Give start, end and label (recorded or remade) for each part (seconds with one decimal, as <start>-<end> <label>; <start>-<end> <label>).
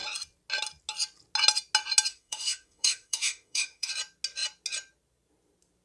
0.0-2.1 recorded; 2.1-3.9 remade; 3.9-5.8 recorded